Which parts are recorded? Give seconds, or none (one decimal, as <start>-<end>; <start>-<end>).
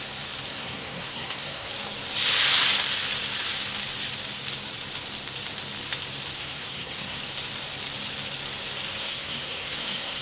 0.0-0.5; 1.7-6.4; 7.2-9.0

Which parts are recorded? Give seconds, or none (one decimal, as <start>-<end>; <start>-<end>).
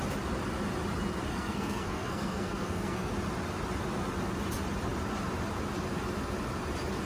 0.0-1.3; 3.1-7.1